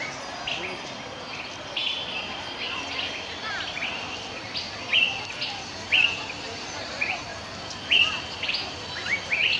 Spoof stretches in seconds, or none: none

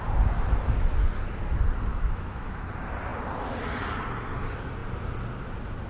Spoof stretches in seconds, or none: 1.9-2.7

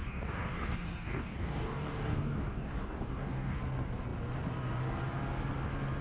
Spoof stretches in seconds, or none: 0.0-3.6

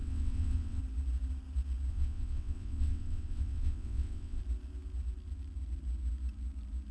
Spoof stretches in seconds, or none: 0.0-0.8; 1.9-4.4

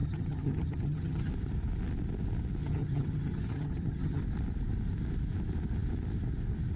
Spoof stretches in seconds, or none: 0.0-1.3; 2.6-4.2

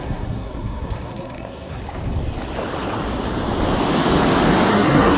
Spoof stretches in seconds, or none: 0.0-1.8; 4.7-5.2

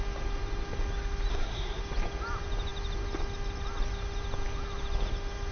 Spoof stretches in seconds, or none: 1.3-1.8

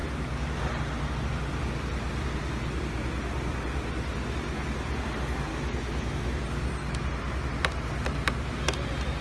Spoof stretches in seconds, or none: 5.5-6.3